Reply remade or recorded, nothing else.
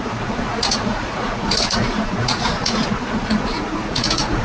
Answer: remade